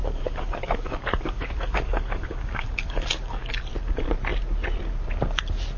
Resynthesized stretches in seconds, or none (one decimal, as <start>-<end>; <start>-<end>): 0.0-3.5

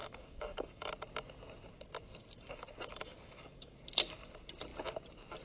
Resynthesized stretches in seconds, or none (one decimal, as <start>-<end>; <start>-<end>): 0.0-0.9; 2.1-3.8

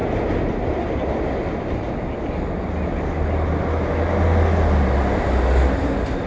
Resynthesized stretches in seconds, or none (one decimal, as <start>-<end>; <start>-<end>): none

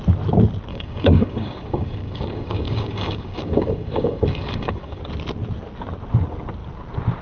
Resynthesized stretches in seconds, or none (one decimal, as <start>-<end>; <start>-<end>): 0.7-5.0

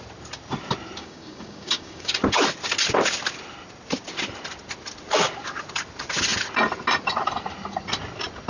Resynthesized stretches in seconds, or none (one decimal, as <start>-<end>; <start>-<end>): 1.0-2.1